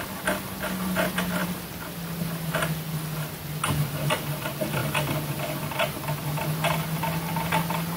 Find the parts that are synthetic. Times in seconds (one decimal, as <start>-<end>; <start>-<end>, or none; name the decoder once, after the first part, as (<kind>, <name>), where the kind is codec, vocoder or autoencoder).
1.4-4.2 (vocoder, BigVGAN v2)